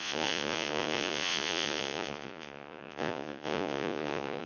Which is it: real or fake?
fake